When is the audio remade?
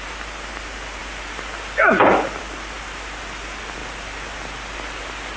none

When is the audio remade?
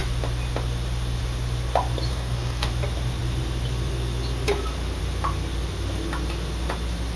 2.1-2.7 (codec, DAC)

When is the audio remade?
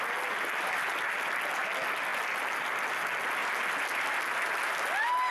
2.1-2.8 (vocoder, BigVGAN v2)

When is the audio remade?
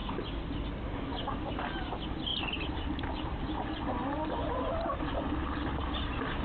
none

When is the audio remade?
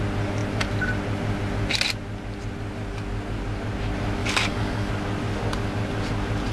4.2-4.9 (codec, DAC)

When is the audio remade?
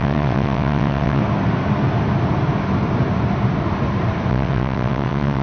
0.0-1.2 (vocoder, WaveNeXt); 4.3-5.4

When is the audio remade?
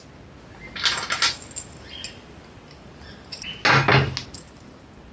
none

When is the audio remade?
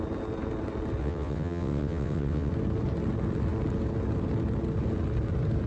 1.0-2.5 (vocoder, WaveNeXt)